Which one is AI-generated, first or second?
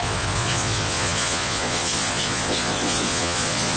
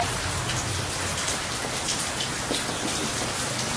first